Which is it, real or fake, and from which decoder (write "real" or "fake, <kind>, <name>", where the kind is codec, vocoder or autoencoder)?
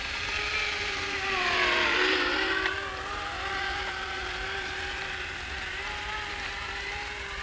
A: fake, vocoder, BigVGAN v2